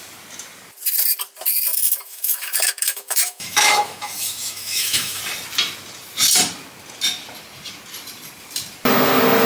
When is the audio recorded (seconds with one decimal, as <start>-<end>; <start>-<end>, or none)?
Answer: 0.0-1.7; 5.2-9.5